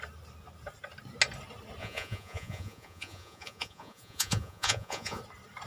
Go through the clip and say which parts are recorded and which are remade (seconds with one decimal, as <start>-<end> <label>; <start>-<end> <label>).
0.0-1.8 recorded; 1.8-5.2 remade; 5.2-5.7 recorded